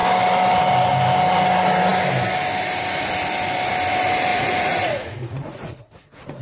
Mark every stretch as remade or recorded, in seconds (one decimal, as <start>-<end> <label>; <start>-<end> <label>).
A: 0.0-4.3 recorded; 4.3-6.4 remade